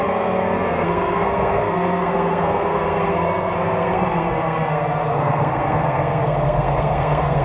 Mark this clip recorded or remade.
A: remade